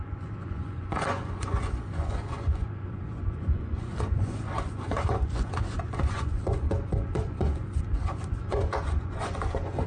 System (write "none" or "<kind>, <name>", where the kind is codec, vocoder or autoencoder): vocoder, Vocos